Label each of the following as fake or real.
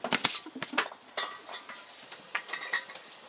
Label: real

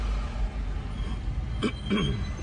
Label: real